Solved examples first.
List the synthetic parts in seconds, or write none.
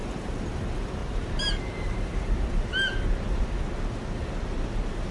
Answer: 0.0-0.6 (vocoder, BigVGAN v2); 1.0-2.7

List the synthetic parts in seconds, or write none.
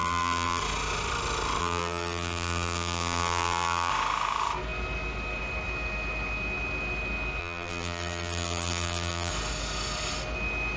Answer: 0.0-0.6 (vocoder, BigVGAN v2); 1.6-3.9; 7.4-9.3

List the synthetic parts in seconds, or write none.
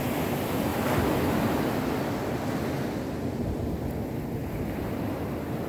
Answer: 4.4-5.7 (vocoder, BigVGAN v2)